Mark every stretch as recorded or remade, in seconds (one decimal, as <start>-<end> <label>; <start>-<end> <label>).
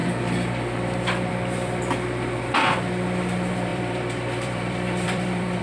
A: 0.0-3.7 recorded; 3.7-5.6 remade